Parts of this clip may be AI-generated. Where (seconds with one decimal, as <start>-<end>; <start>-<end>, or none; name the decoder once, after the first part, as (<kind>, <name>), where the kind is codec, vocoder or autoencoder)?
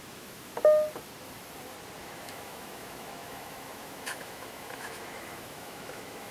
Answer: 0.0-0.5 (autoencoder, DAC-VAE); 2.0-6.3